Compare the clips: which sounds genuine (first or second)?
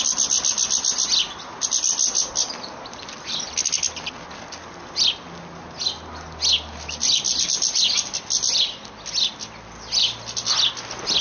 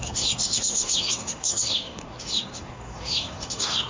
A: first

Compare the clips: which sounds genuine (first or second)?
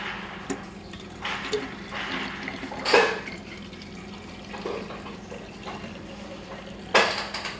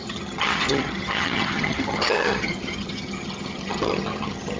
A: first